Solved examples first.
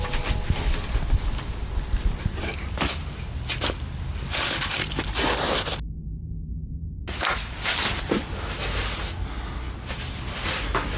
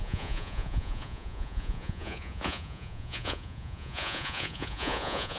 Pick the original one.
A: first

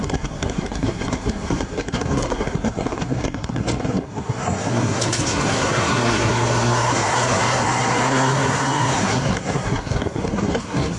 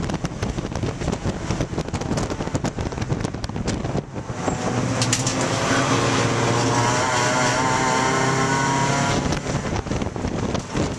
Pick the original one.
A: second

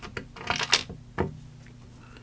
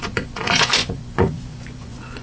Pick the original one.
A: first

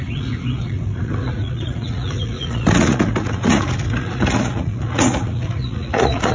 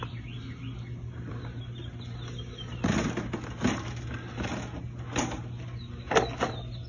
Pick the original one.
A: second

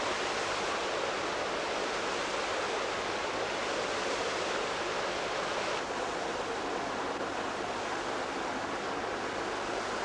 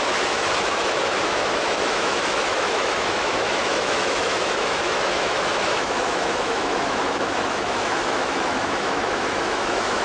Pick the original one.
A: first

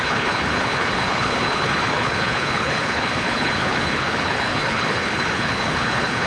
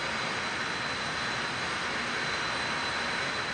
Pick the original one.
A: second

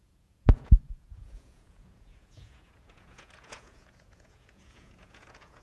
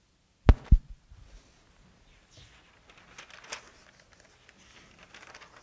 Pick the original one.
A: second